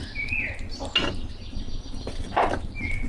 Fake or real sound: real